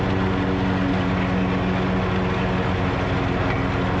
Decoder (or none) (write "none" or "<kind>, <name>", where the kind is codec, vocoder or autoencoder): none